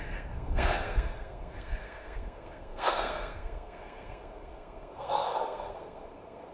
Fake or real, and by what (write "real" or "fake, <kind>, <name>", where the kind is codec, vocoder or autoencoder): fake, codec, SNAC